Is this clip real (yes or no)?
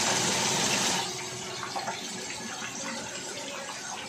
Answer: yes